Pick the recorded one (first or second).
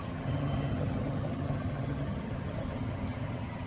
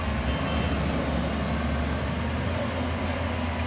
second